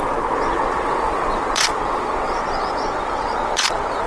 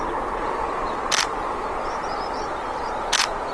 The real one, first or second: second